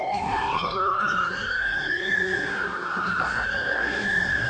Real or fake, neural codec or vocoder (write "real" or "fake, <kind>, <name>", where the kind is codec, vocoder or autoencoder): fake, codec, SNAC